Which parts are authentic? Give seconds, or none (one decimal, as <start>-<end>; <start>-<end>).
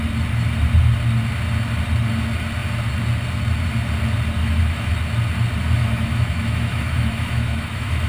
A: 0.0-4.4; 4.9-5.8